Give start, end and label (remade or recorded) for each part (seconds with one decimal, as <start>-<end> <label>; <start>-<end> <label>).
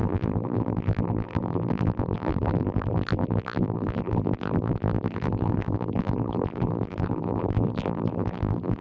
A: 0.0-8.8 remade